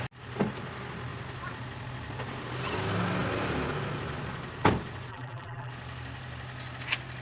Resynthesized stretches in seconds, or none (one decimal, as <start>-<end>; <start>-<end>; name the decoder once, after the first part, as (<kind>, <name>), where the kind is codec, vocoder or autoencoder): 5.1-5.7 (vocoder, BigVGAN v2)